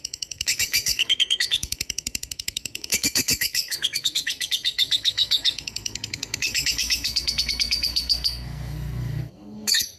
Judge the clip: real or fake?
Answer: fake